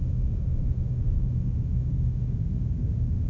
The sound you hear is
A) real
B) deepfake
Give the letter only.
B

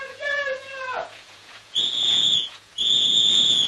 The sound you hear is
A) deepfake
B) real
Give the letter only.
A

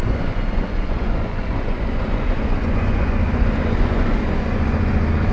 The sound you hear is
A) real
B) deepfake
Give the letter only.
B